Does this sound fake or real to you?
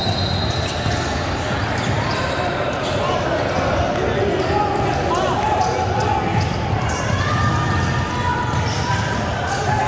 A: real